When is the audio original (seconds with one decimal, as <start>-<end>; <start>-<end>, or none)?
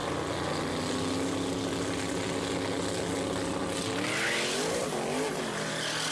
0.0-6.1